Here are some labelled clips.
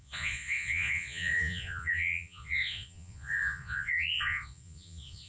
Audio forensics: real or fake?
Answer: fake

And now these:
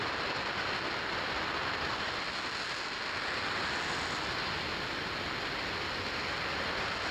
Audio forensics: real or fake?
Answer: real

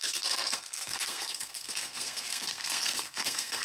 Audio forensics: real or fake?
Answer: fake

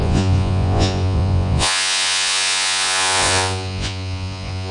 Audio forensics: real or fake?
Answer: fake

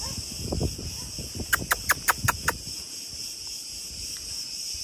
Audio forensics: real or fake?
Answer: real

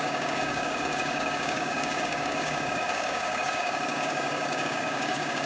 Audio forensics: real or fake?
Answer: fake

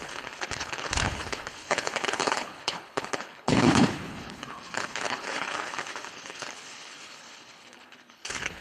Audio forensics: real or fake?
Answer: fake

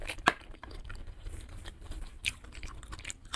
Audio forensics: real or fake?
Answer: fake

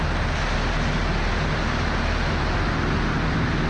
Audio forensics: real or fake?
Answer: real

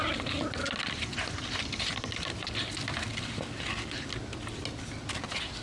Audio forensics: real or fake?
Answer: real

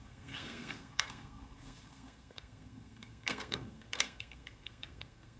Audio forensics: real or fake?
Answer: fake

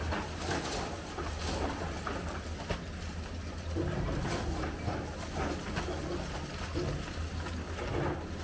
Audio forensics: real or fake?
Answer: real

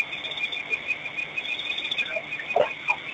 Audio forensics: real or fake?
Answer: real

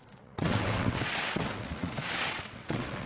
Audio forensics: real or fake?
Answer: fake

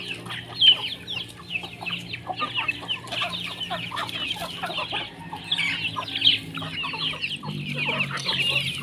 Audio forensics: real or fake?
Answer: real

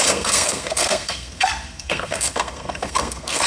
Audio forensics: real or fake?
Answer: fake